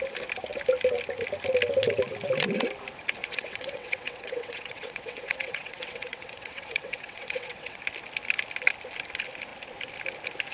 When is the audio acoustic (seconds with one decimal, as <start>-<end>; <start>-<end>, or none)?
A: 0.0-3.2; 7.8-10.5